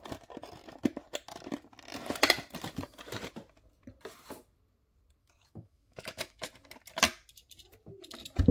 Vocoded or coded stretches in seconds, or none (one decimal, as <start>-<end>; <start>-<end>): 5.2-6.4